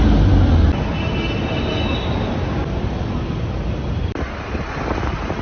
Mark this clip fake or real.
real